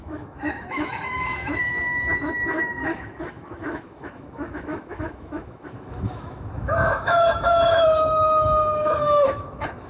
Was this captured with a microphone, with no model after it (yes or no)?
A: no